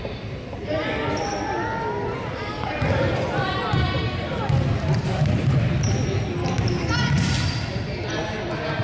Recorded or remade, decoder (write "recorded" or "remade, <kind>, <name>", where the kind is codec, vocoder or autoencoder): recorded